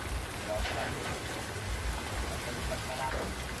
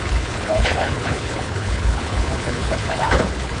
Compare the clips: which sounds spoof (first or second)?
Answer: second